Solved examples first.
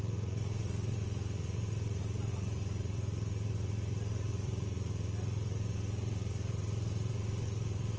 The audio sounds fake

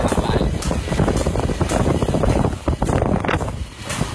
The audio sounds real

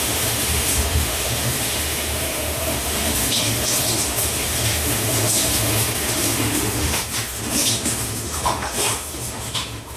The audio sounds fake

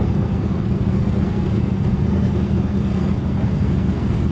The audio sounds fake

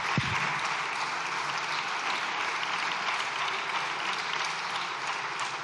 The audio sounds real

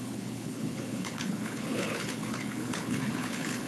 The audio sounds fake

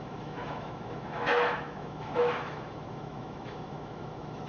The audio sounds fake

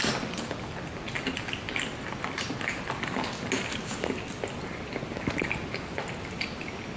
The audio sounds real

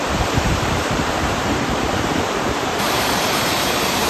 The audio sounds fake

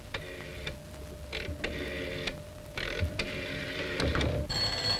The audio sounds real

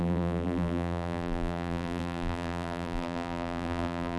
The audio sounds fake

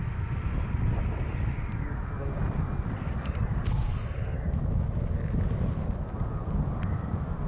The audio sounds real